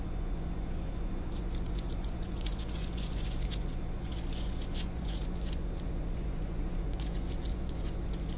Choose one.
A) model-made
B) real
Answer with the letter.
A